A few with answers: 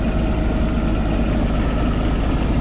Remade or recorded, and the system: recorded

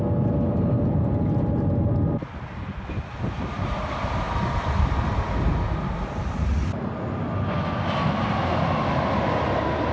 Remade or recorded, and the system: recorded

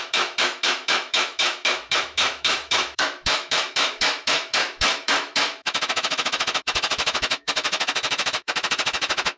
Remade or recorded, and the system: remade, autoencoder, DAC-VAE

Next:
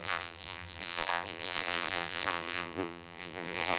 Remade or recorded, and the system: remade, vocoder, BigVGAN v2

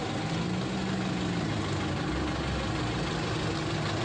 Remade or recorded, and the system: recorded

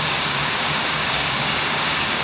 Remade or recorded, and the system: remade, codec, DAC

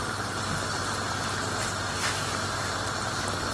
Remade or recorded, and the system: recorded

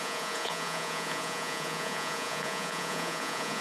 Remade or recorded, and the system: remade, vocoder, Vocos